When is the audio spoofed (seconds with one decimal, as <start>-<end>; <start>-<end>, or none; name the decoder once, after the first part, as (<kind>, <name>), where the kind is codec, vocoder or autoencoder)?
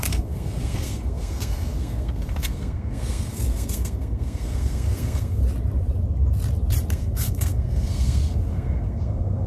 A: 0.0-5.4 (codec, SNAC); 6.9-9.5